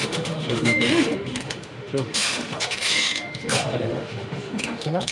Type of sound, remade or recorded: remade